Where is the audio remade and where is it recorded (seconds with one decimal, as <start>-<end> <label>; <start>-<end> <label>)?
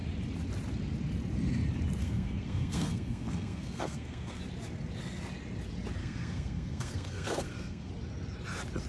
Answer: 0.0-2.0 recorded; 2.0-4.4 remade; 4.4-6.0 recorded; 6.0-7.9 remade; 7.9-8.9 recorded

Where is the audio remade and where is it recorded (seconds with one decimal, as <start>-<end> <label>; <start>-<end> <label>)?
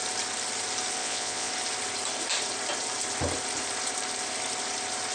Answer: 0.0-1.0 recorded; 1.0-1.5 remade; 1.5-5.1 recorded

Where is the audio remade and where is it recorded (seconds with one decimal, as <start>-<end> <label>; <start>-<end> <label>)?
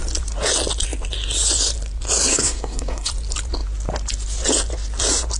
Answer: 0.0-2.3 recorded; 2.3-3.1 remade; 3.1-5.4 recorded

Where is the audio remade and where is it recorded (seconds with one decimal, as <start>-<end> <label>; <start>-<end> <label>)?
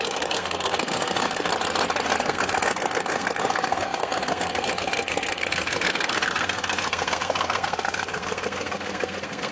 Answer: 0.0-1.5 remade; 1.5-2.2 recorded; 2.2-9.5 remade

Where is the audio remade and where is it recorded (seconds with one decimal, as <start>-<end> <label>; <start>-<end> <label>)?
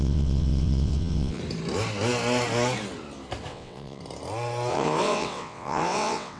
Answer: 0.0-1.4 remade; 1.4-3.5 recorded; 3.5-4.0 remade; 4.0-4.7 recorded; 4.7-6.4 remade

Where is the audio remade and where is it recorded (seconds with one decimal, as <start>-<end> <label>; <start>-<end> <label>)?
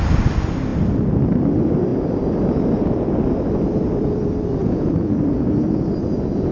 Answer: 0.0-4.6 recorded; 4.6-5.6 remade; 5.6-6.5 recorded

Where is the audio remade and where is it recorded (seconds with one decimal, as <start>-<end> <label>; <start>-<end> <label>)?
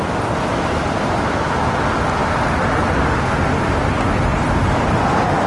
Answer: 0.0-5.5 recorded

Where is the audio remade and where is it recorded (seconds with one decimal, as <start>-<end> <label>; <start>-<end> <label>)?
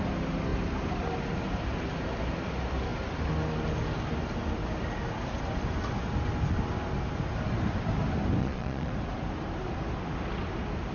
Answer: 0.0-8.4 recorded; 8.4-8.9 remade; 8.9-10.9 recorded